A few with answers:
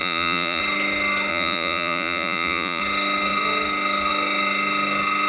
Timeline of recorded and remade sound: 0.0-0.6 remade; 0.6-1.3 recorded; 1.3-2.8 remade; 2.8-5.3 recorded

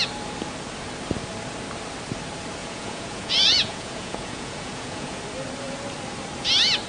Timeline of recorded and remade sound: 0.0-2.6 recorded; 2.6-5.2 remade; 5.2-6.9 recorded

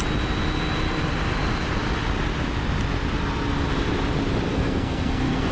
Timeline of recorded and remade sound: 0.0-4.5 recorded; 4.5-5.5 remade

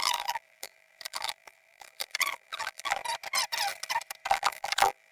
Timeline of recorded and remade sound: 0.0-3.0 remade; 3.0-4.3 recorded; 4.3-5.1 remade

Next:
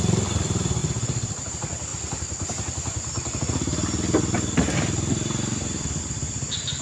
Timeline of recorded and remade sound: 0.0-0.8 recorded; 0.8-1.5 remade; 1.5-6.8 recorded